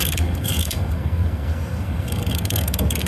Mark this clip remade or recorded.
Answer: remade